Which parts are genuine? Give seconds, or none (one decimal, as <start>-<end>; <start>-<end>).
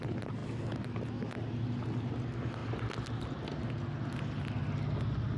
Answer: 0.0-5.4